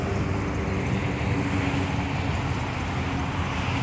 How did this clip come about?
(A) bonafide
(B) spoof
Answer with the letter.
A